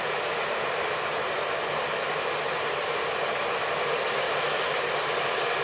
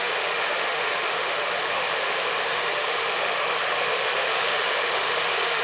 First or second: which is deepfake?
second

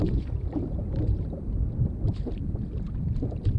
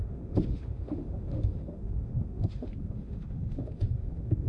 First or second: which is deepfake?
second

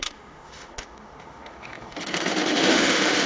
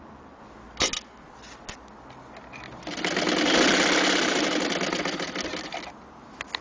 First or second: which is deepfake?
first